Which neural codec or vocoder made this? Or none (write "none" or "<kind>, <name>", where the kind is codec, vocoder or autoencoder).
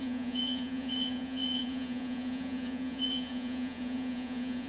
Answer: vocoder, Vocos